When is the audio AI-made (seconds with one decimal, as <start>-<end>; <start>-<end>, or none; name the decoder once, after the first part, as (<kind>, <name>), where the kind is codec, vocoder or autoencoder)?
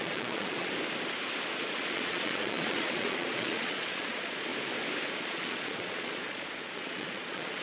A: 0.0-0.7 (vocoder, Vocos); 1.5-4.5; 5.1-7.6